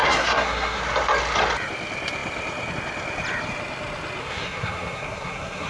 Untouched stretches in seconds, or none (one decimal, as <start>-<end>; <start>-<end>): 0.8-4.2